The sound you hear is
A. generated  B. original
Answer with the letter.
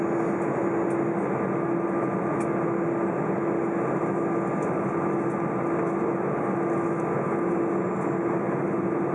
B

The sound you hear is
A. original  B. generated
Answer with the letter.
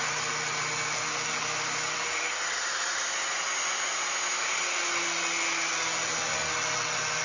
A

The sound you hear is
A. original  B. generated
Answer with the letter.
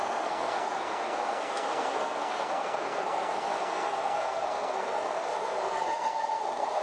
B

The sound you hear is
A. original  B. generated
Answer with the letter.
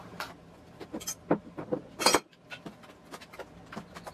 A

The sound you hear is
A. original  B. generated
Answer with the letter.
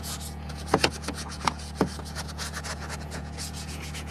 B